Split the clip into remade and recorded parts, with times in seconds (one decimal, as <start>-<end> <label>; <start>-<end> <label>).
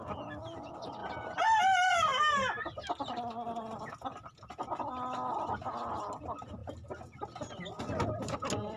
0.0-8.8 recorded